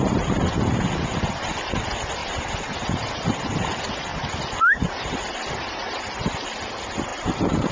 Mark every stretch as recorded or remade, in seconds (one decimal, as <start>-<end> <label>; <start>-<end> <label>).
0.0-2.2 recorded; 2.2-3.4 remade; 3.4-4.1 recorded; 4.1-6.1 remade; 6.1-7.1 recorded; 7.1-7.7 remade